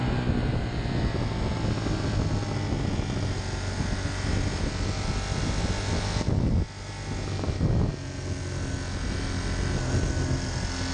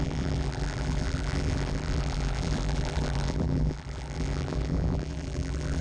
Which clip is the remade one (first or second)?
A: second